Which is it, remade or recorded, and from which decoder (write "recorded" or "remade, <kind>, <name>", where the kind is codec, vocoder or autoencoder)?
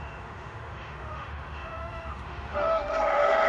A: remade, autoencoder, DAC-VAE